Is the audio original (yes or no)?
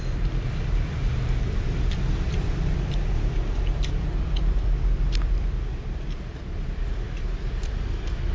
no